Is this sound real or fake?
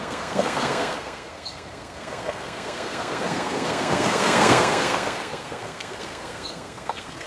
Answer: fake